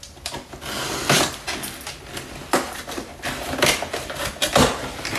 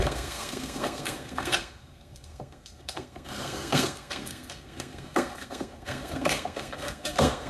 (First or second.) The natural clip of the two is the first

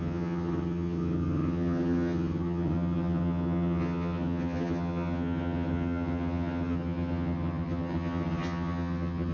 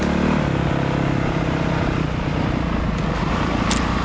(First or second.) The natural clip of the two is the second